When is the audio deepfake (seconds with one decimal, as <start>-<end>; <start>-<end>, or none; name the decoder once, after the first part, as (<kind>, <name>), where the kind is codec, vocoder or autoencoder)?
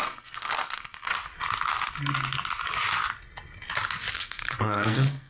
0.0-1.1 (codec, SNAC); 4.1-5.3